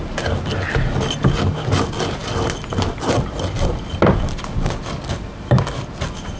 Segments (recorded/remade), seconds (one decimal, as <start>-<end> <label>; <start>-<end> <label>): 0.0-6.4 recorded